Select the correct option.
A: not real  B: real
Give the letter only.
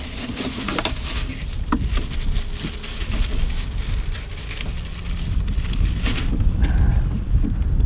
B